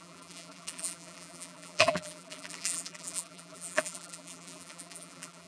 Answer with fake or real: fake